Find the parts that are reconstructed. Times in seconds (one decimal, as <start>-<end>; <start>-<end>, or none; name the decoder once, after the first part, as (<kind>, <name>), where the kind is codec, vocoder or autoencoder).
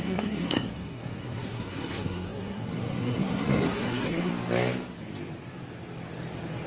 0.0-4.3 (codec, SNAC)